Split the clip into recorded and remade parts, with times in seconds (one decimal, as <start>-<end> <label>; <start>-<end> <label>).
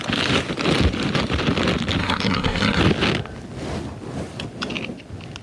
0.0-2.0 recorded; 2.0-2.8 remade; 2.8-5.4 recorded